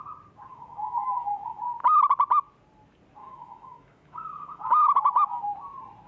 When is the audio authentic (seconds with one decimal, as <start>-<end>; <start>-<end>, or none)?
0.0-0.5; 1.6-3.2; 5.4-6.1